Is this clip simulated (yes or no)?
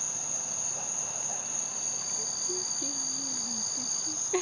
no